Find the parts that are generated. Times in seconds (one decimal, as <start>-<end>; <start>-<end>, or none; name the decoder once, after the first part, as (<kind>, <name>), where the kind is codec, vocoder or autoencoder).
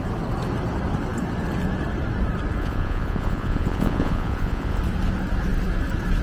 2.6-4.8 (vocoder, Vocos)